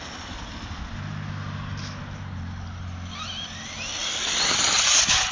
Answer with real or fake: real